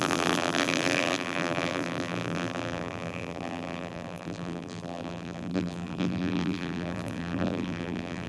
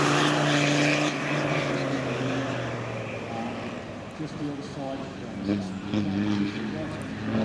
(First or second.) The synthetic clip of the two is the first